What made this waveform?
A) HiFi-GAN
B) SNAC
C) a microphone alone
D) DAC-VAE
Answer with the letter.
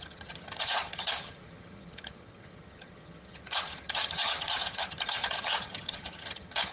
A